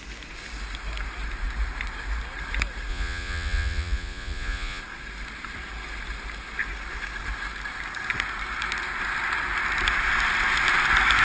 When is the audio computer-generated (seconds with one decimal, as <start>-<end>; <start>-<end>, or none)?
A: 2.9-4.8